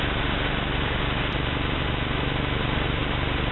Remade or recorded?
recorded